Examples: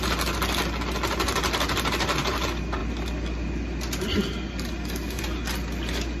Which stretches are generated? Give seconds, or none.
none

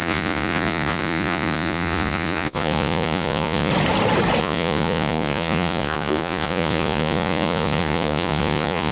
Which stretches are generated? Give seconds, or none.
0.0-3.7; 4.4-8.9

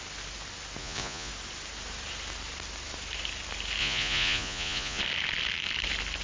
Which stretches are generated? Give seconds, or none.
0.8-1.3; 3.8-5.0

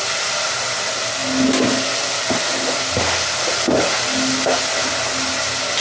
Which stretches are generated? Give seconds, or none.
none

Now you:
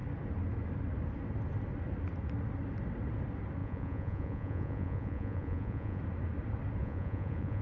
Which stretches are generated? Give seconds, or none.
3.6-6.0; 6.8-7.6